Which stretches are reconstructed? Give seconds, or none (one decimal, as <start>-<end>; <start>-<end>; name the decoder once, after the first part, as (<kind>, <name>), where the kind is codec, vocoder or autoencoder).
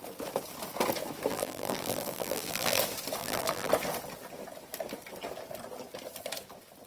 1.3-2.8 (vocoder, BigVGAN v2); 3.2-3.7